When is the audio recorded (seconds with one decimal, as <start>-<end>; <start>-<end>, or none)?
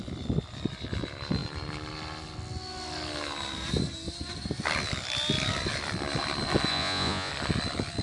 0.0-6.7; 7.3-8.0